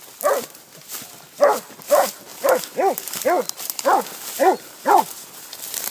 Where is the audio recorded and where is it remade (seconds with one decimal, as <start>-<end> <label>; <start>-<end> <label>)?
0.0-5.9 recorded